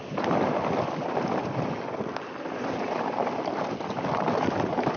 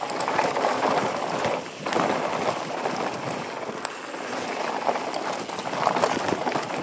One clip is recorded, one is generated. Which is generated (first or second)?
first